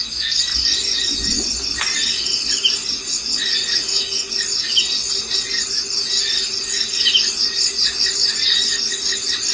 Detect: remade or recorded recorded